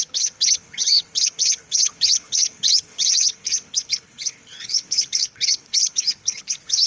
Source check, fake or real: fake